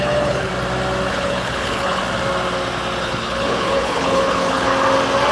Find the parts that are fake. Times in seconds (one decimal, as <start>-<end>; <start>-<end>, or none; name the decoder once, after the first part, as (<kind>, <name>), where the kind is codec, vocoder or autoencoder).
0.0-0.5 (codec, HILCodec); 1.1-2.0; 3.0-4.7